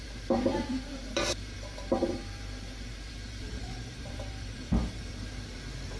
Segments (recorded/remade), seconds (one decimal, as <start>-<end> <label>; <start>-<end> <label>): 0.0-6.0 remade